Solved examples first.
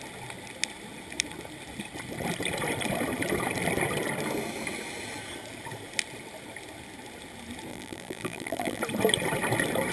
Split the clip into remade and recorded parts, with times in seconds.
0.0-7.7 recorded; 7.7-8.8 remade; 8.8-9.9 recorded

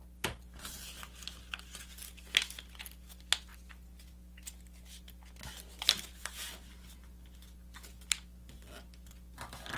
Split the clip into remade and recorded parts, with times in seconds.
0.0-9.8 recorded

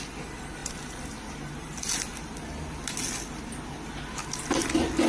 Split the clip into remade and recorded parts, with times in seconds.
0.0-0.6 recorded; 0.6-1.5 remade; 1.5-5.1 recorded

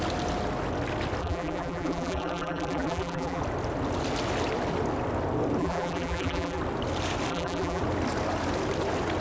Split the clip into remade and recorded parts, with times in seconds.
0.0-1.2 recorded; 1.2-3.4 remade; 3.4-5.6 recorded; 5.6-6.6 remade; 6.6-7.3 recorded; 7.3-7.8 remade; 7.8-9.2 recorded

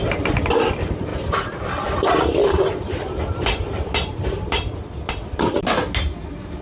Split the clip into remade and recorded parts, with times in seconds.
0.0-1.1 recorded; 1.1-5.1 remade; 5.1-6.6 recorded

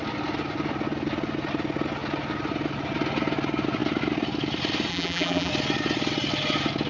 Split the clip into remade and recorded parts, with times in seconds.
0.0-4.9 recorded; 4.9-5.5 remade; 5.5-6.9 recorded